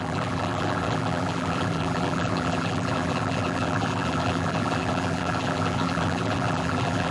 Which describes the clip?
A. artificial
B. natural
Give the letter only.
A